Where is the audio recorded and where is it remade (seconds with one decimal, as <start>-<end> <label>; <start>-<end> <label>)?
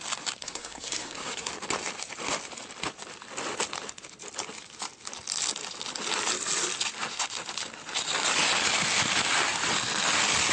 0.0-0.4 recorded; 0.4-1.5 remade; 1.5-10.5 recorded